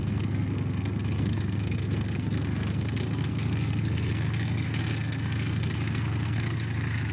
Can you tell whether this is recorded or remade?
remade